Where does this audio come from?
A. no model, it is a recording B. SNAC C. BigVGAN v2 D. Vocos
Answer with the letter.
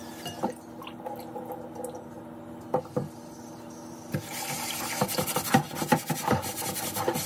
A